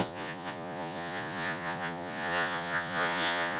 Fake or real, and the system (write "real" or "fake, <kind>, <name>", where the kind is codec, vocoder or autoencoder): fake, vocoder, Vocos